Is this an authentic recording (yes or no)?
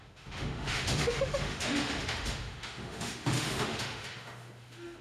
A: no